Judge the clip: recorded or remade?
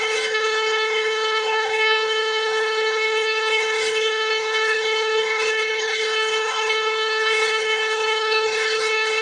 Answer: remade